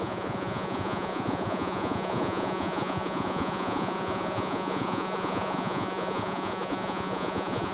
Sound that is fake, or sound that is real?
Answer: fake